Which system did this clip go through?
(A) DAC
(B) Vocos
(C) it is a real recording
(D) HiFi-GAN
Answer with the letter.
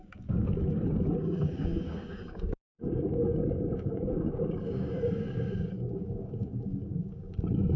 A